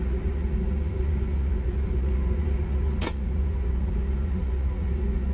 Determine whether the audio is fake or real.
fake